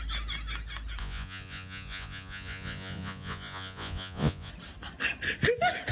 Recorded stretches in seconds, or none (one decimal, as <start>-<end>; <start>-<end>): 0.0-1.0; 4.5-5.9